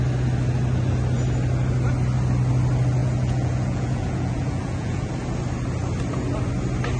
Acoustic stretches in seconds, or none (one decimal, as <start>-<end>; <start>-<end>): 0.0-3.0; 5.1-7.0

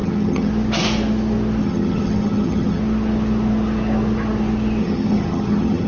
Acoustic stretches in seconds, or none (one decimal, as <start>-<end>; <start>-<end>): 0.5-1.6; 2.8-4.8

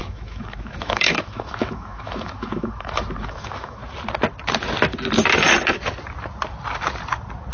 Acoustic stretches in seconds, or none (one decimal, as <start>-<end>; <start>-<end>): 3.8-7.5

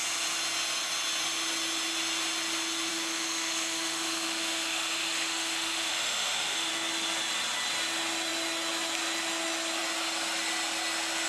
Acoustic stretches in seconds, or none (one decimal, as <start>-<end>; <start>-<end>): 0.0-2.9; 6.7-11.3

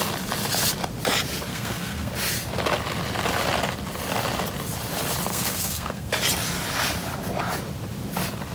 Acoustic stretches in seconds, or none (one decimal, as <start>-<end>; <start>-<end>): 0.0-1.5; 2.1-5.3; 6.1-8.5

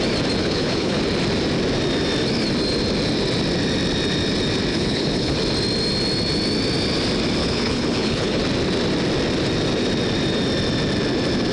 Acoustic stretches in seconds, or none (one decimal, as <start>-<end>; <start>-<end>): 0.0-0.4; 1.0-4.7; 5.4-7.4; 8.4-11.5

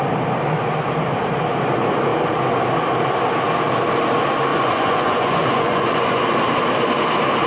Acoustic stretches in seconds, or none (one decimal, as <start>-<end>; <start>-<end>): 0.0-4.5; 6.2-7.5